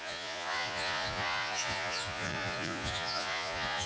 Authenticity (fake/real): fake